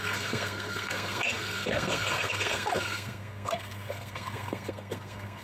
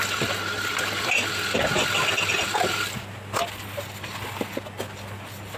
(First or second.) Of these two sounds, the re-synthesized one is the first